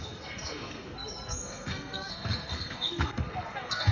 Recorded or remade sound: remade